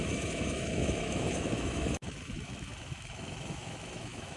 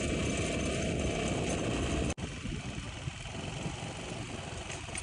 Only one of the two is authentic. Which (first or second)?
second